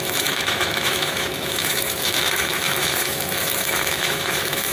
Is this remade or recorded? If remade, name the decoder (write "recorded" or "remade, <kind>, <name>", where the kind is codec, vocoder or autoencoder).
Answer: remade, autoencoder, DAC-VAE